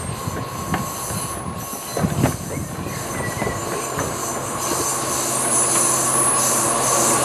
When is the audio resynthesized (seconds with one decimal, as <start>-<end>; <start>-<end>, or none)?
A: none